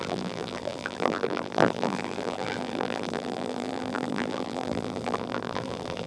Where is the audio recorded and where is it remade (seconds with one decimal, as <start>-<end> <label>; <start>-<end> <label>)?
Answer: 0.0-6.1 remade